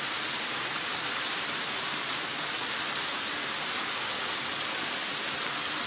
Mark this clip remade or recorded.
recorded